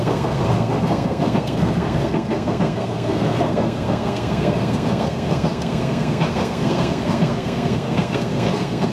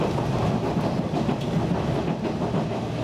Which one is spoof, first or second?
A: first